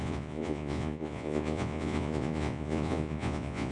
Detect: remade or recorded remade